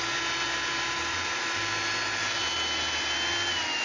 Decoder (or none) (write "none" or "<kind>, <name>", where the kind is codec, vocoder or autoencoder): none